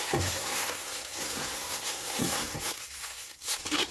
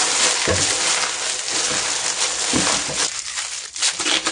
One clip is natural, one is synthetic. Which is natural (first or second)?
second